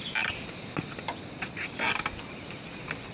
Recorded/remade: recorded